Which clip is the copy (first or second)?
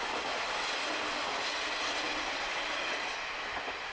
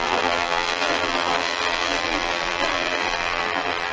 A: second